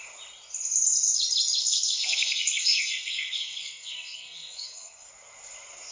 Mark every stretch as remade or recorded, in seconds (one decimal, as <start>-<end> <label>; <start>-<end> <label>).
0.0-1.6 recorded; 1.6-5.1 remade; 5.1-5.9 recorded